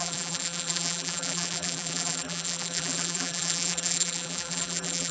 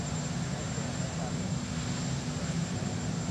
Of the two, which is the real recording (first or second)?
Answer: second